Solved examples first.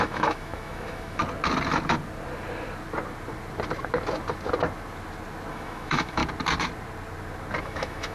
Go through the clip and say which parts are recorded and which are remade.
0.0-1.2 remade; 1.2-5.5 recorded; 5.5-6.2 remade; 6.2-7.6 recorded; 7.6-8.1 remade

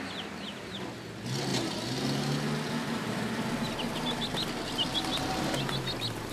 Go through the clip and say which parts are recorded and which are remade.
0.0-6.3 recorded

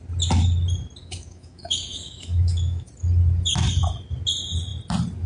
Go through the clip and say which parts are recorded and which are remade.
0.0-1.0 recorded; 1.0-2.9 remade; 2.9-5.3 recorded

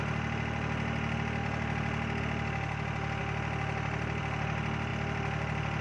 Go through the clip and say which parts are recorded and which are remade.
0.0-5.8 recorded

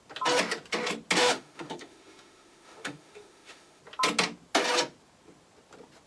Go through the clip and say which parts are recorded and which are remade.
0.0-1.2 recorded; 1.2-3.8 remade; 3.8-6.1 recorded